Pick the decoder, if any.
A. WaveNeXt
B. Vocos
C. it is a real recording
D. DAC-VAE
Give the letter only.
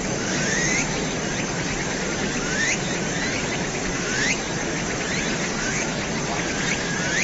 C